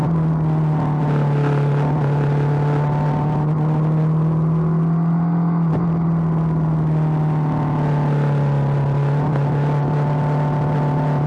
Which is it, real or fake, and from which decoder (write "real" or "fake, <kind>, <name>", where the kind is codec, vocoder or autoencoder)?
real